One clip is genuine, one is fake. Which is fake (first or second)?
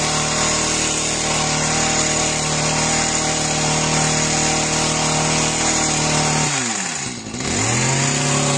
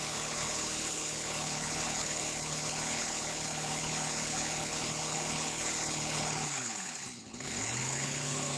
second